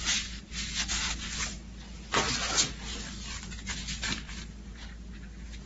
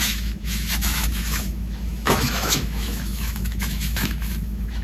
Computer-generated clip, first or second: second